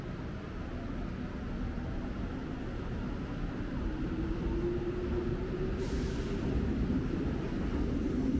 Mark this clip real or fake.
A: real